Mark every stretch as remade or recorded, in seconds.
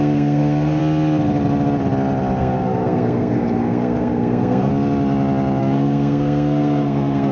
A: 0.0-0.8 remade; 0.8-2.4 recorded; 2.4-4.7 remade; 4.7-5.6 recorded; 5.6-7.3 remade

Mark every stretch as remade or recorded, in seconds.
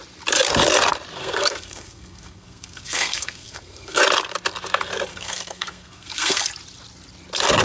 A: 0.0-1.2 recorded; 1.2-4.0 remade; 4.0-5.1 recorded; 5.1-6.5 remade; 6.5-7.6 recorded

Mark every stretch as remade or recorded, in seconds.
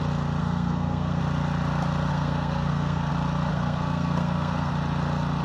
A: 0.0-0.4 recorded; 0.4-1.2 remade; 1.2-2.1 recorded; 2.1-3.1 remade; 3.1-3.5 recorded; 3.5-4.7 remade; 4.7-5.4 recorded